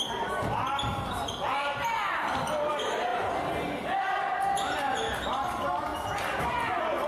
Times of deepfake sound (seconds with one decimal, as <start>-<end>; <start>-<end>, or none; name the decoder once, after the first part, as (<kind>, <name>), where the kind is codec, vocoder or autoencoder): none